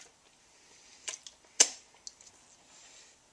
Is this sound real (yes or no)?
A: yes